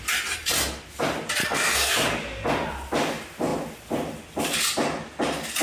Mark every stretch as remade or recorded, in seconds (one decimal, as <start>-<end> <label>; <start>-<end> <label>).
0.0-1.4 recorded; 1.4-1.9 remade; 1.9-5.6 recorded